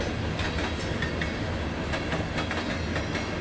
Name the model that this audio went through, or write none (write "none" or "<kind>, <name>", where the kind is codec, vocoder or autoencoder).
none